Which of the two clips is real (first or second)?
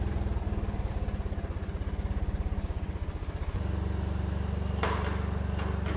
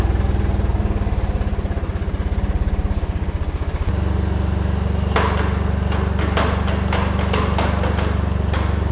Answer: second